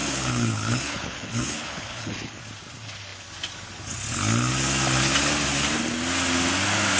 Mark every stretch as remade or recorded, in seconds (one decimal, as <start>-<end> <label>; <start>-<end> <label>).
0.0-2.4 remade; 2.4-7.0 recorded